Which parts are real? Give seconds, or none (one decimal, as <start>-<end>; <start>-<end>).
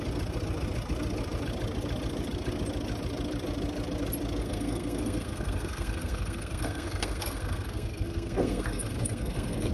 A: 0.0-4.4